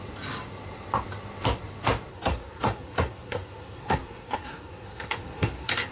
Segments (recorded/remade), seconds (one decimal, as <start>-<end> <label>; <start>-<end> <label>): 0.0-2.1 recorded; 2.1-5.9 remade